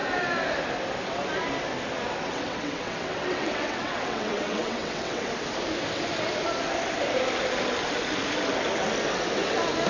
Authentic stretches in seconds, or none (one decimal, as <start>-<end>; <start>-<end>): 0.0-2.2; 5.3-9.9